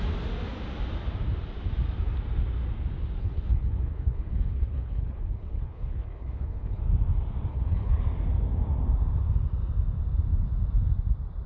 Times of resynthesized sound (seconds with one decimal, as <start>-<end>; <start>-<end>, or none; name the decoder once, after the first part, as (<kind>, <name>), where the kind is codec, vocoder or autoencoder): 3.2-6.8 (codec, HILCodec); 7.5-8.0